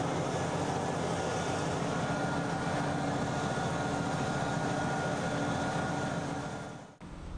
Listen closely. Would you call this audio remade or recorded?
recorded